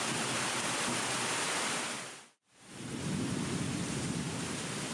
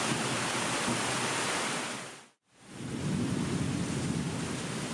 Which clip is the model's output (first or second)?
first